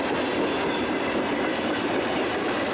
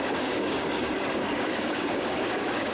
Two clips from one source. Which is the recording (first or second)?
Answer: first